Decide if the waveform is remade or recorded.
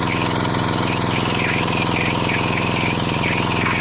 recorded